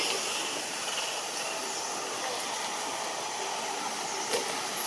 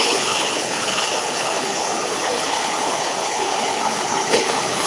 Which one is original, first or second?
first